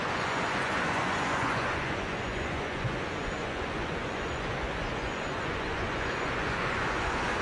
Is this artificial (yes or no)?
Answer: yes